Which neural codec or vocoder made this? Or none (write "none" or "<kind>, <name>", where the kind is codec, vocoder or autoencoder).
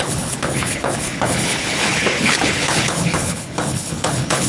codec, HILCodec